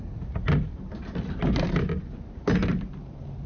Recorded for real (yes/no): yes